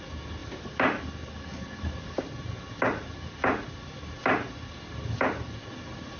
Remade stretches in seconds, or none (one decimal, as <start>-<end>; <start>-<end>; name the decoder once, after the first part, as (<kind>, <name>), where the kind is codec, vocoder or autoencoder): none